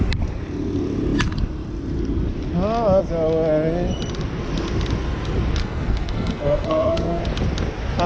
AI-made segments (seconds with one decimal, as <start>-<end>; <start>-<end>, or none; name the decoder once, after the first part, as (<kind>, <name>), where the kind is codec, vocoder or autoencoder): 5.6-7.2 (codec, SNAC)